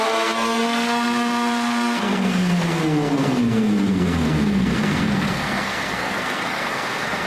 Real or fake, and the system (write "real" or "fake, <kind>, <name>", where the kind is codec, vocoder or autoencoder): fake, codec, SNAC